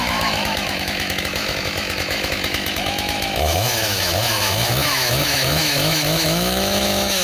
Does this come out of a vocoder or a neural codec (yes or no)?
yes